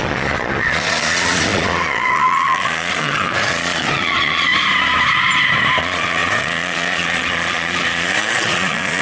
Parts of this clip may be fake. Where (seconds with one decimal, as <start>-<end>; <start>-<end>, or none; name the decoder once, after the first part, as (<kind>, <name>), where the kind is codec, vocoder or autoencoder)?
0.0-4.5 (vocoder, Vocos); 5.8-9.0